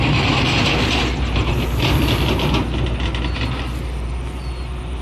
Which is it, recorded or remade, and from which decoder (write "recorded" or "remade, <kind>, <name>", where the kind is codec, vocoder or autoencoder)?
recorded